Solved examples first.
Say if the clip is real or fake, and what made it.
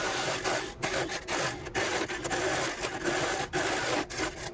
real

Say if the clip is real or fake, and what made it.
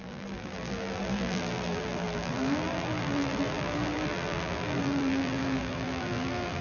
fake, vocoder, BigVGAN v2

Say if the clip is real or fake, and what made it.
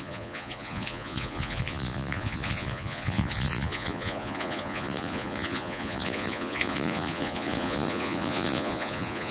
fake, vocoder, Vocos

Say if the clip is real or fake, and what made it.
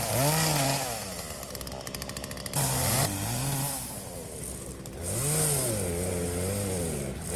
real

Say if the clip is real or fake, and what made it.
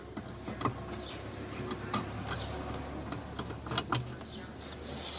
real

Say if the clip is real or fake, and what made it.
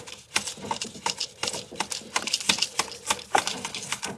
real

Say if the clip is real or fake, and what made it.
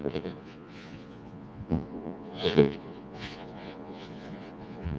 fake, vocoder, Vocos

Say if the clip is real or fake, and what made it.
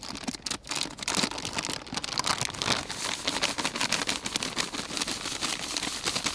real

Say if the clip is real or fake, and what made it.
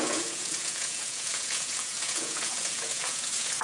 fake, vocoder, Vocos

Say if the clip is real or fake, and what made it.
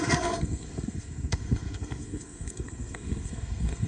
fake, codec, SNAC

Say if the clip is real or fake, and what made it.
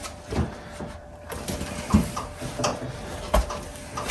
real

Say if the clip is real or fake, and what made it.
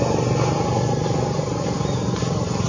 real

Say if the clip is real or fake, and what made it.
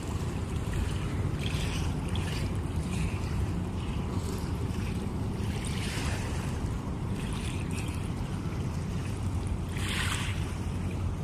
fake, vocoder, BigVGAN v2